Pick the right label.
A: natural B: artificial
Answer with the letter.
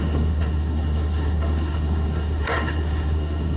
B